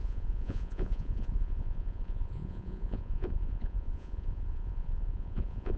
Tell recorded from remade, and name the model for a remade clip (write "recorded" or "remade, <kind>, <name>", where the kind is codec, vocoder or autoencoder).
remade, vocoder, Vocos